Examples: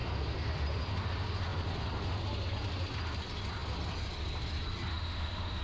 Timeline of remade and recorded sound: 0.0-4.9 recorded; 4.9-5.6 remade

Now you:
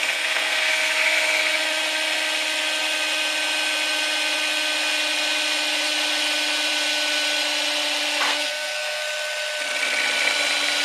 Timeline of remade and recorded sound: 0.0-1.5 remade; 1.5-8.3 recorded; 8.3-9.0 remade; 9.0-10.8 recorded

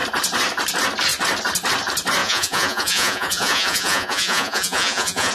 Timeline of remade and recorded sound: 0.0-2.2 recorded; 2.2-5.3 remade

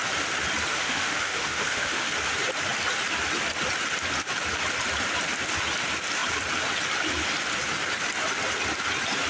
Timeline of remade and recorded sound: 0.0-0.7 recorded; 0.7-2.1 remade; 2.1-9.3 recorded

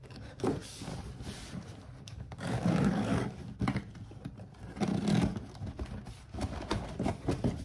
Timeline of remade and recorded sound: 0.0-0.9 remade; 0.9-2.0 recorded; 2.0-3.4 remade; 3.4-7.6 recorded

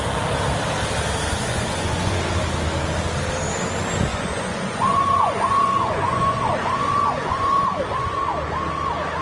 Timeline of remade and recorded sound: 0.0-1.3 recorded; 1.3-2.2 remade; 2.2-4.1 recorded; 4.1-8.2 remade; 8.2-9.2 recorded

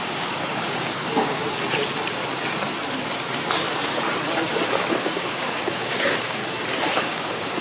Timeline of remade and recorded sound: 0.0-1.4 remade; 1.4-4.9 recorded; 4.9-6.4 remade; 6.4-7.0 recorded; 7.0-7.6 remade

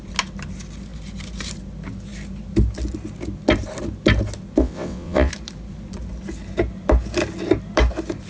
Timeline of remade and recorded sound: 0.0-4.6 recorded; 4.6-5.3 remade; 5.3-8.3 recorded